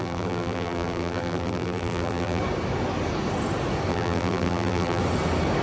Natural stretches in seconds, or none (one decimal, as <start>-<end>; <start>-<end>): 2.4-3.9; 5.0-5.6